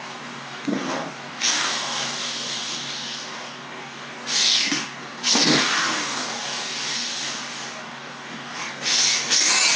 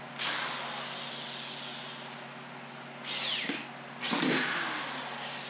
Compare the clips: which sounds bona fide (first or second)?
second